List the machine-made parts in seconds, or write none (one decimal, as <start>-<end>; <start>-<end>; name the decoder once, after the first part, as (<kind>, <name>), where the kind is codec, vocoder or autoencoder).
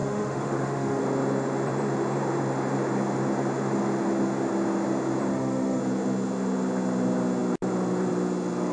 0.0-1.0 (autoencoder, DAC-VAE); 5.3-5.8